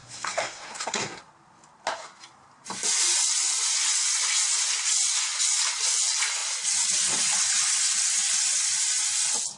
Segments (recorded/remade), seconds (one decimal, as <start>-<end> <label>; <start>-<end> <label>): 0.0-1.2 remade; 1.2-9.6 recorded

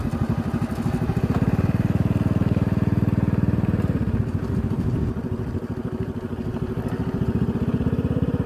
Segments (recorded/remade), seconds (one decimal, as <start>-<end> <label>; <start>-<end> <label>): 0.0-8.5 recorded

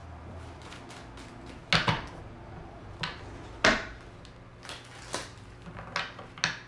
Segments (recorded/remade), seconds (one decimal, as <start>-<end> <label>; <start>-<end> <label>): 0.0-0.9 remade; 0.9-6.7 recorded

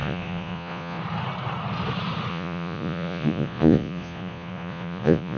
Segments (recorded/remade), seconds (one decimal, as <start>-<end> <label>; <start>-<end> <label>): 0.0-1.0 remade; 1.0-2.3 recorded; 2.3-5.4 remade

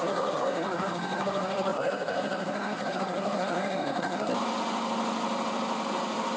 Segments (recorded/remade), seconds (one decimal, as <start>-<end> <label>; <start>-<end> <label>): 0.0-4.3 remade; 4.3-6.4 recorded

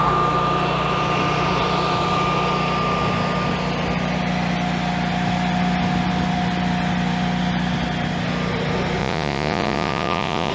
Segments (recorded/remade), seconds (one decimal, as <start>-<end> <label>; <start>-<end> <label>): 0.0-9.0 recorded; 9.0-10.5 remade

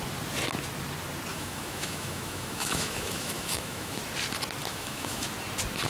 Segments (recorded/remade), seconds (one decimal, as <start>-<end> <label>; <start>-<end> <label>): 0.0-1.3 recorded; 1.3-4.0 remade; 4.0-4.7 recorded; 4.7-5.3 remade; 5.3-5.9 recorded

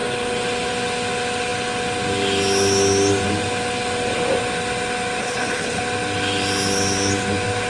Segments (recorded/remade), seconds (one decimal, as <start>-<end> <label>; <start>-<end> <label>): 0.0-5.2 recorded; 5.2-5.8 remade; 5.8-7.7 recorded